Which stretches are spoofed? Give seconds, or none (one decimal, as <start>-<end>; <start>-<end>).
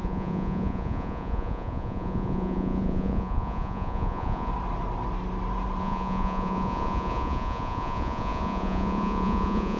0.0-4.5; 5.8-9.8